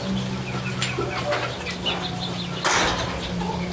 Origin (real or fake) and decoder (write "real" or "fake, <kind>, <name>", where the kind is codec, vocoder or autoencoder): real